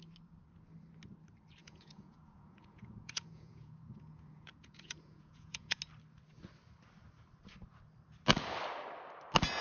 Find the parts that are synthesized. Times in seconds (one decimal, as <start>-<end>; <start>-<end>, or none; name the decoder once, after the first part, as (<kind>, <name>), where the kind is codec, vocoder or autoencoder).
1.6-5.8 (vocoder, Vocos)